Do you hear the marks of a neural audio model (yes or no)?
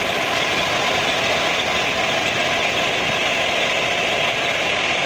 no